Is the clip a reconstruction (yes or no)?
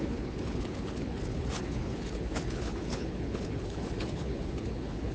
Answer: yes